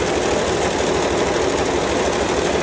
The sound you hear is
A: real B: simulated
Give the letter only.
A